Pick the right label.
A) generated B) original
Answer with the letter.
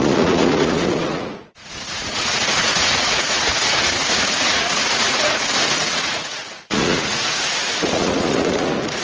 A